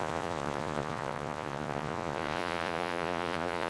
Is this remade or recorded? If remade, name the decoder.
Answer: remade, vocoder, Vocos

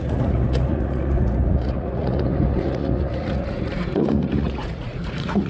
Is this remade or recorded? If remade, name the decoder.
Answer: remade, vocoder, Vocos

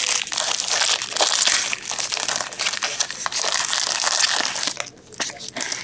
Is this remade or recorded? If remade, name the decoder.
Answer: recorded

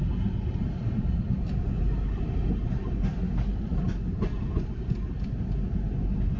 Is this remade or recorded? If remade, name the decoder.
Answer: recorded